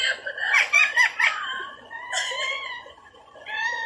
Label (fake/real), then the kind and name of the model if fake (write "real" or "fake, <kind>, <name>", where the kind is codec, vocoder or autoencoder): fake, vocoder, Vocos